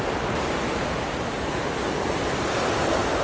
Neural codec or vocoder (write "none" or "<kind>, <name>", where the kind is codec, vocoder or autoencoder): none